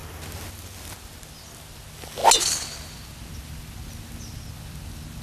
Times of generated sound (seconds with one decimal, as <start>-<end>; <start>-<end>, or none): none

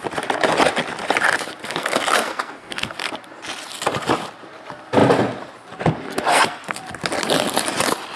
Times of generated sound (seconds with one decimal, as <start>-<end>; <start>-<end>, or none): 1.6-3.1; 6.3-6.8

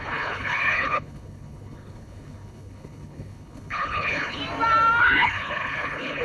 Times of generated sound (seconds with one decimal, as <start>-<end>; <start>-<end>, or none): 0.0-4.4; 5.0-6.2

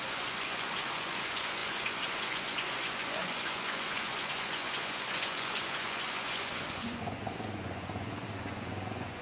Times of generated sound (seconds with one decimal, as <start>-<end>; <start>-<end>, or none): 0.0-9.2